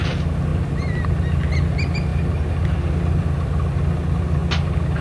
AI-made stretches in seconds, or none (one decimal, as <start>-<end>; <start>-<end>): 0.5-1.0